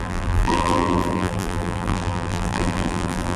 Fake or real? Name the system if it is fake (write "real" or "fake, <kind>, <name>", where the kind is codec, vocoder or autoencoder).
fake, vocoder, BigVGAN v2